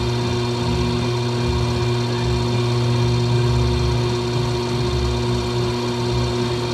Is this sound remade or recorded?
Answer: recorded